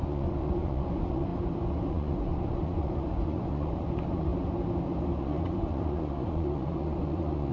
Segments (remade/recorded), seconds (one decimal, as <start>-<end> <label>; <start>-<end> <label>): 0.0-1.3 remade; 1.3-1.9 recorded; 1.9-4.3 remade; 4.3-5.2 recorded; 5.2-7.5 remade